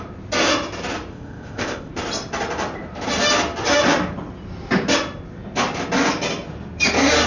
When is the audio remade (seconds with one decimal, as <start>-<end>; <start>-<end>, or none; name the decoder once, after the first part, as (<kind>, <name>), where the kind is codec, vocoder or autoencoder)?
1.1-1.9 (codec, ZipCodec)